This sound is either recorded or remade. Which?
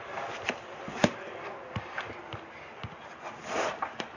recorded